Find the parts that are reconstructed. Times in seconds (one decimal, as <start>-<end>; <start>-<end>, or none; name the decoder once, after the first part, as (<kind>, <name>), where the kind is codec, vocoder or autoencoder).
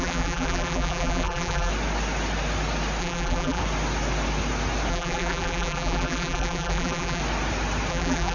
0.0-1.7 (vocoder, BigVGAN v2); 3.0-3.6; 4.9-7.2; 7.9-8.3